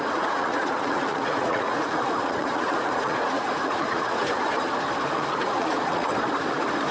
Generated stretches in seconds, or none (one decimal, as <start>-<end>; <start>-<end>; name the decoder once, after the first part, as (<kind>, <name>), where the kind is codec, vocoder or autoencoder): 0.0-4.2 (vocoder, Vocos); 5.0-6.1

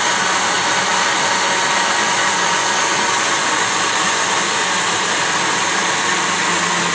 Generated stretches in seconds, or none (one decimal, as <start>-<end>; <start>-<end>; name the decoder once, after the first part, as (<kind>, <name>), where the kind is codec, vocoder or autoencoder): 2.0-4.7 (vocoder, Vocos)

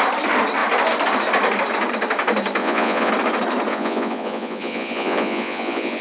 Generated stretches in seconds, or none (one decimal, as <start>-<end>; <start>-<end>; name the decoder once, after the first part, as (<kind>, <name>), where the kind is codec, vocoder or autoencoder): 2.6-3.1 (vocoder, Vocos); 3.7-6.0

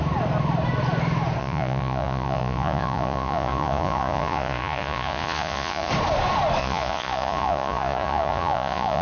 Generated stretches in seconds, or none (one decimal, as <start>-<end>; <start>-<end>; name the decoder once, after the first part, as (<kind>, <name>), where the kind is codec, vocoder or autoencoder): 1.4-5.9 (vocoder, Vocos); 6.6-9.0

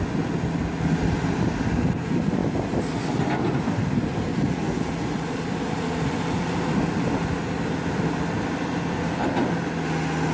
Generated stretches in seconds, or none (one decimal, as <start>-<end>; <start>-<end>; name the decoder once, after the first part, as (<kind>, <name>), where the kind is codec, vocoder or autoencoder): none

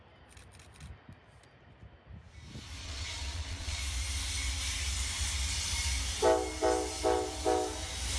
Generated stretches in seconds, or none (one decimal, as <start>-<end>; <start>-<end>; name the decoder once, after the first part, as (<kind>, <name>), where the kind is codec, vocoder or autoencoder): 2.8-3.8 (vocoder, Vocos)

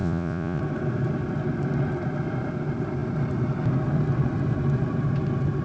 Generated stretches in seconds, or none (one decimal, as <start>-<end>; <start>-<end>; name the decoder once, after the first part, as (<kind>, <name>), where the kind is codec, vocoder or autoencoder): 0.0-0.6 (vocoder, Vocos)

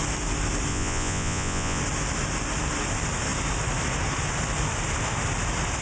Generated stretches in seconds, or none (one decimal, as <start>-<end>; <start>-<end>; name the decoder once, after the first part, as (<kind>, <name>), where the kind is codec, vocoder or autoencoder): 0.7-1.8 (vocoder, Vocos)